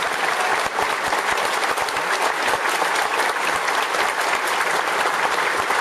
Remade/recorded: recorded